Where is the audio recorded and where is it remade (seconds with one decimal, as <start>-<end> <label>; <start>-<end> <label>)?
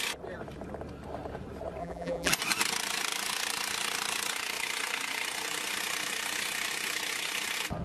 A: 0.0-1.8 recorded; 1.8-2.3 remade; 2.3-7.8 recorded